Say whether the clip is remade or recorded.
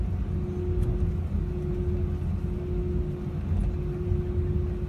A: recorded